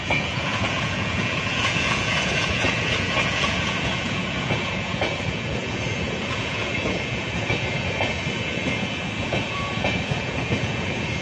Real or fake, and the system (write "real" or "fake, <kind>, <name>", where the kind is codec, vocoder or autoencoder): fake, vocoder, Vocos